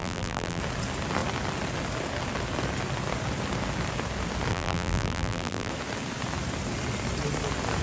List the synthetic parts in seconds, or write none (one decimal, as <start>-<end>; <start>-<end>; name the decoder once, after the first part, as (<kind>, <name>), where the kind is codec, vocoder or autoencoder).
0.0-0.6 (vocoder, BigVGAN v2); 4.5-5.7